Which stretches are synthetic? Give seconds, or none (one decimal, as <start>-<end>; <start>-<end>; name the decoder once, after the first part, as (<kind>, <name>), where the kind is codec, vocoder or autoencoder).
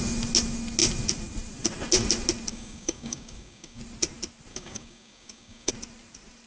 2.5-3.8 (codec, DAC); 4.5-5.7